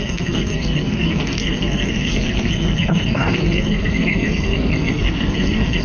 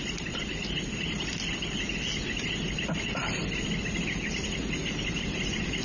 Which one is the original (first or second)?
second